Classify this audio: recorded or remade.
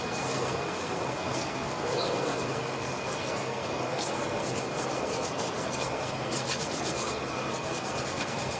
remade